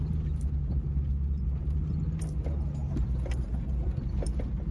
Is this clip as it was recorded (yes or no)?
yes